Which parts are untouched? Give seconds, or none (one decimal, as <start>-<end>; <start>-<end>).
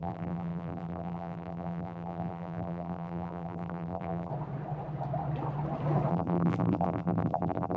4.3-6.1